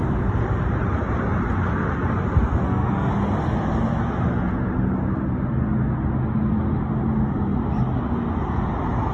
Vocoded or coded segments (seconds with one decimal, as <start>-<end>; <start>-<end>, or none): 2.6-3.1

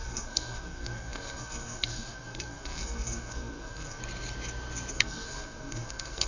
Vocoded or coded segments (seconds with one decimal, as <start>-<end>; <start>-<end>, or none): 0.0-4.0; 4.9-6.3

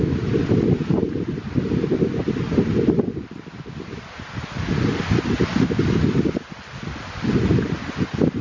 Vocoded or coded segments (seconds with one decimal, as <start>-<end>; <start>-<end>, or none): none

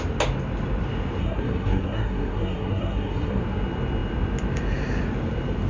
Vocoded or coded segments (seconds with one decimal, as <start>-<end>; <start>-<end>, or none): 1.2-3.4